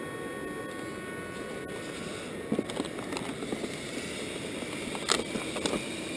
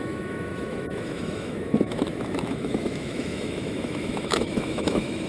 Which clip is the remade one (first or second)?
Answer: second